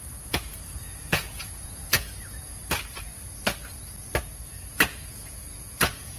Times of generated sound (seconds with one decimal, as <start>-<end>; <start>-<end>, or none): 0.0-2.6; 4.7-6.2